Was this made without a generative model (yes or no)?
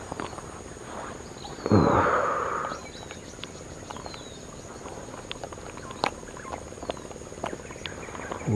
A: yes